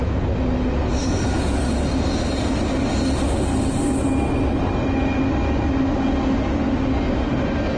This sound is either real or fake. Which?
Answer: real